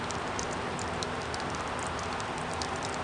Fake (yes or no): no